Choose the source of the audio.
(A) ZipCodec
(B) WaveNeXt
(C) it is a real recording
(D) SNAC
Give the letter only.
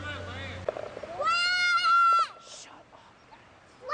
C